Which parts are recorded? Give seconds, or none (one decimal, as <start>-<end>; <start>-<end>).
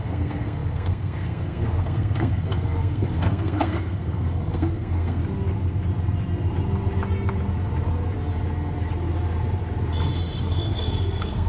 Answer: 5.2-10.4